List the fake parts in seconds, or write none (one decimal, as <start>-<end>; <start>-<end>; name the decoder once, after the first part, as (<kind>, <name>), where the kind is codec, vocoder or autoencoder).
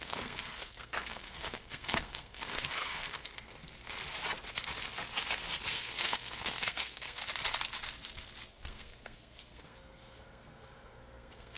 0.0-3.5 (codec, SNAC); 5.7-7.2; 8.5-11.6